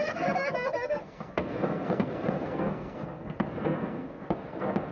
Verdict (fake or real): fake